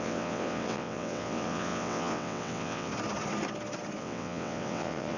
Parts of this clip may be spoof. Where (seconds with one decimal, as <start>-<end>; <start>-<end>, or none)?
0.0-2.9; 4.0-5.2